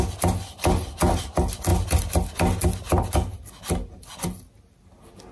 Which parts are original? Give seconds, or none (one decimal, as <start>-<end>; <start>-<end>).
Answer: 0.0-5.3